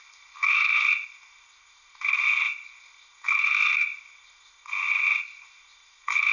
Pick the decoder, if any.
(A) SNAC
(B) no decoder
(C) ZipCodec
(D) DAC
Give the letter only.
C